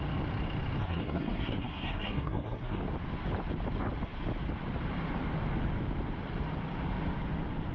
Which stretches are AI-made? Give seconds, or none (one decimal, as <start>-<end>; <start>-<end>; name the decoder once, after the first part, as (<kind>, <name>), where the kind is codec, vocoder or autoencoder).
0.8-2.8 (codec, SNAC)